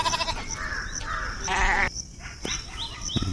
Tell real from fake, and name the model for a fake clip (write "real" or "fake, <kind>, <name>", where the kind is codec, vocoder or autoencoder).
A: real